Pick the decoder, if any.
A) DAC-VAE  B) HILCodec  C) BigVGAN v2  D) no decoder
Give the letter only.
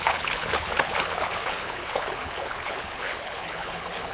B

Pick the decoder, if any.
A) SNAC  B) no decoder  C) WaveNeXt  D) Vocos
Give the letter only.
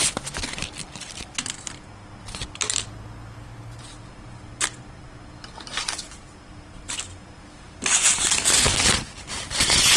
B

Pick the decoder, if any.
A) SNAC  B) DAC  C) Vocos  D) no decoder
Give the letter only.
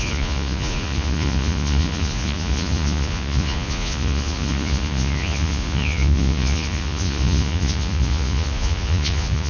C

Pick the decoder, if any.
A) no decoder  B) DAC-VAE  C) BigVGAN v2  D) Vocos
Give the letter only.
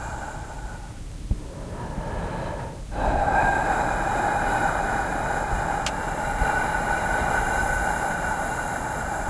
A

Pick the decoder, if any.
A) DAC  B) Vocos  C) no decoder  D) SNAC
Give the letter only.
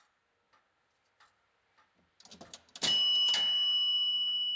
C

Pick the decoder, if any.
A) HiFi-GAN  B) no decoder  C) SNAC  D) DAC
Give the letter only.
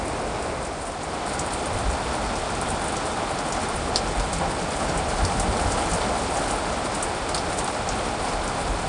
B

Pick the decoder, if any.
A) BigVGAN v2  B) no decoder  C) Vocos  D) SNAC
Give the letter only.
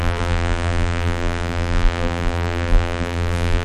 A